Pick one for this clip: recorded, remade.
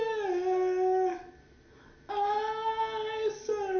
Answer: recorded